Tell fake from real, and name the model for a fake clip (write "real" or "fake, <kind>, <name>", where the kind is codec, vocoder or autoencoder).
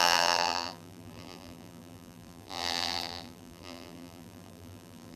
fake, vocoder, BigVGAN v2